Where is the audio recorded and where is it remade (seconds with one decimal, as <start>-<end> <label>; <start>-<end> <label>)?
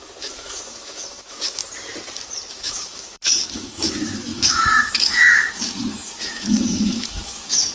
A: 0.0-1.6 remade; 1.6-2.5 recorded; 2.5-7.7 remade